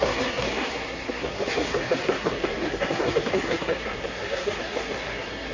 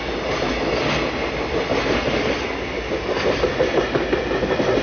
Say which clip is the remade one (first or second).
first